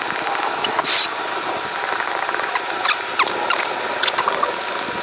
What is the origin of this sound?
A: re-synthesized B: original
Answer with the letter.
B